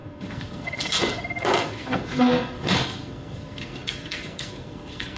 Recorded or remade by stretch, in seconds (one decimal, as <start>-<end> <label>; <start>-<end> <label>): 0.0-5.2 remade

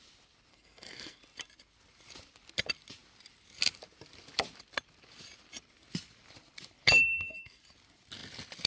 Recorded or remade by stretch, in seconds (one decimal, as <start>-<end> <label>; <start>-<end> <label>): 0.0-0.5 recorded; 0.5-1.2 remade; 1.2-7.0 recorded; 7.0-7.6 remade; 7.6-8.7 recorded